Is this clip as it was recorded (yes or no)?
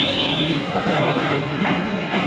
no